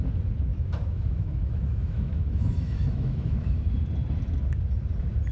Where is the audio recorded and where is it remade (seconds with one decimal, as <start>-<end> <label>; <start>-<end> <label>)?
0.0-0.5 recorded; 0.5-3.7 remade; 3.7-5.3 recorded